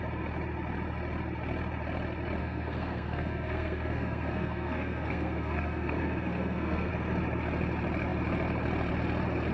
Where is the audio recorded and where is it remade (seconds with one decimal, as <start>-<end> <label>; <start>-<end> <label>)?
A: 0.0-2.4 recorded; 2.4-6.9 remade; 6.9-9.5 recorded